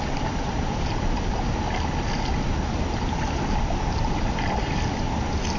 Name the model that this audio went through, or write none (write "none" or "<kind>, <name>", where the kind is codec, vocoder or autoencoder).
none